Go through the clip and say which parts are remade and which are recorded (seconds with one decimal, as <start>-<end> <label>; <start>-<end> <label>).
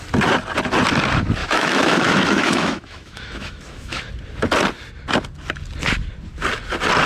0.0-1.4 recorded; 1.4-4.1 remade; 4.1-7.1 recorded